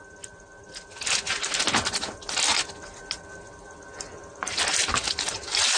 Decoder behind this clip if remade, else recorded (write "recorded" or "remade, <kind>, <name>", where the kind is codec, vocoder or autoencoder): recorded